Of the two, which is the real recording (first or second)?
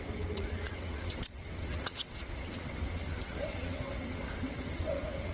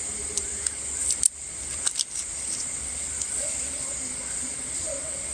second